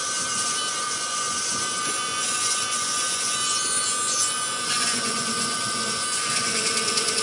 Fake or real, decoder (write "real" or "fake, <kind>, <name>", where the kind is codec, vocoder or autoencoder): fake, vocoder, Vocos